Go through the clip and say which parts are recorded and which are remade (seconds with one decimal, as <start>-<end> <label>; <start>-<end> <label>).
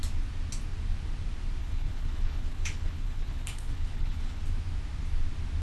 0.0-1.6 recorded; 1.6-4.4 remade; 4.4-5.6 recorded